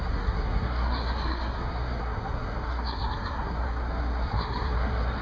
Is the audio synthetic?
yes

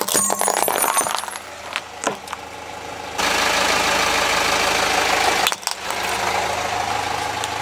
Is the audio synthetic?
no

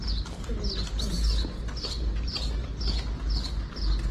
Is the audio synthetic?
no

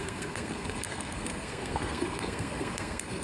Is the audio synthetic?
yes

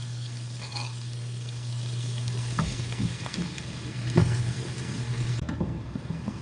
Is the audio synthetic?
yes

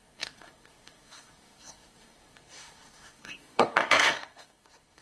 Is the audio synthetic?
yes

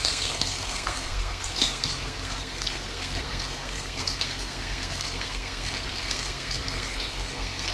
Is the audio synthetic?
yes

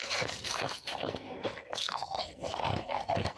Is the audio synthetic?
yes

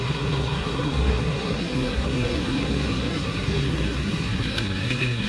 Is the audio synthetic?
yes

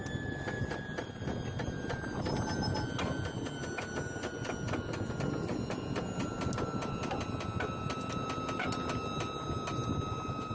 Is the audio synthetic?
no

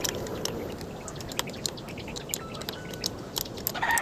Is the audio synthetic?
no